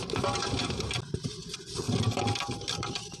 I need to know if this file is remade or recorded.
recorded